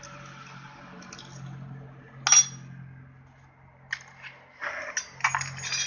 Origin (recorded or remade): recorded